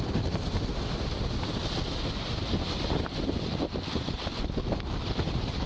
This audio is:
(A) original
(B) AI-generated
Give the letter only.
A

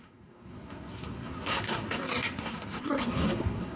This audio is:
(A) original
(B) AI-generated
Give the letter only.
B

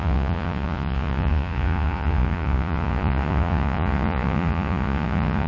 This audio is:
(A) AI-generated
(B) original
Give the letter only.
A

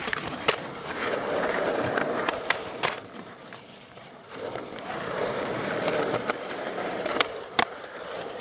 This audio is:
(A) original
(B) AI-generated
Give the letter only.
B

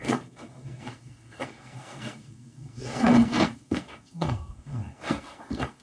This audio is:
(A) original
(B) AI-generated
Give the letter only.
B